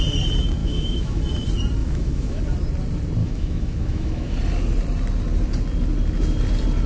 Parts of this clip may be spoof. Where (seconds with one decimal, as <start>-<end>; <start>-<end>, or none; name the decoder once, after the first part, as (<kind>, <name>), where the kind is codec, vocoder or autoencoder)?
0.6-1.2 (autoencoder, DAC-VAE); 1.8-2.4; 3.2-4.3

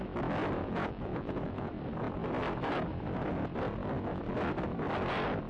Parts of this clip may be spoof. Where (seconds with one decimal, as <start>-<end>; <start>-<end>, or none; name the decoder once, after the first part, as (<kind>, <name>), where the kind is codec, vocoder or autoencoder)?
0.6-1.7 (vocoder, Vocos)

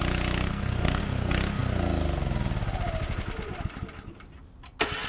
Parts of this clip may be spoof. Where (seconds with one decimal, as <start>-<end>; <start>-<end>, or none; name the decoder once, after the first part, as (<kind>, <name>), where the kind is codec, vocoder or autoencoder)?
0.5-1.0 (codec, SNAC)

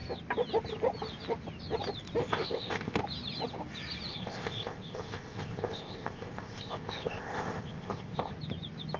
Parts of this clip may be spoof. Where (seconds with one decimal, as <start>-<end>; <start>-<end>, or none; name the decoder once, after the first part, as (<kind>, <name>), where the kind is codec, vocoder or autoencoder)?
2.2-3.0 (codec, ZipCodec); 4.1-8.3